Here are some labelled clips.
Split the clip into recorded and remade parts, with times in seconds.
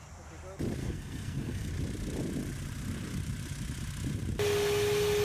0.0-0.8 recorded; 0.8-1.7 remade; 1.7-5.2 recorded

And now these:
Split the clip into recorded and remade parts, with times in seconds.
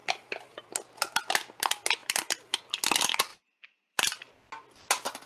0.0-2.0 recorded; 2.0-2.7 remade; 2.7-3.3 recorded; 3.3-4.3 remade; 4.3-5.3 recorded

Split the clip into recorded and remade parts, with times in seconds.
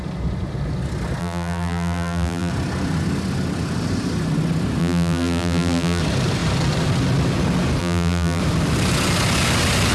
0.0-1.2 recorded; 1.2-2.5 remade; 2.5-4.8 recorded; 4.8-6.0 remade; 6.0-7.8 recorded; 7.8-8.4 remade; 8.4-9.9 recorded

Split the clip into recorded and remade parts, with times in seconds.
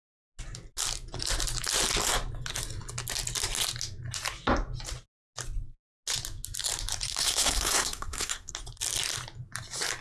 0.0-7.1 recorded; 7.1-8.5 remade; 8.5-10.0 recorded